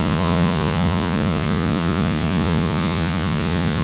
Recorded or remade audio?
remade